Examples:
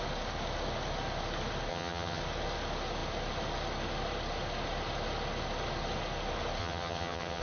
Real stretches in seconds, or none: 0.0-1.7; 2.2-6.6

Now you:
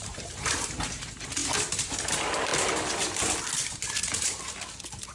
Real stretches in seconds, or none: 1.4-2.1; 2.5-5.1

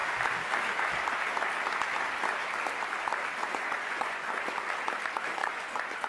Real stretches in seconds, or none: 0.0-3.4; 4.3-5.4